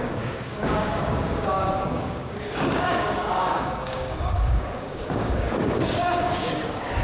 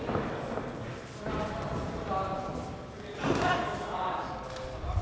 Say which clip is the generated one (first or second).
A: first